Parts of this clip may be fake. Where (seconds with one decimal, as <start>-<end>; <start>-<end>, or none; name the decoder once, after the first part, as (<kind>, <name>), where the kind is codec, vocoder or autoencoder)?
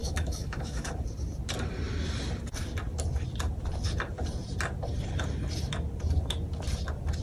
0.0-0.9 (autoencoder, DAC-VAE)